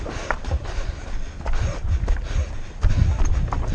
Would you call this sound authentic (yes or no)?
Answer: yes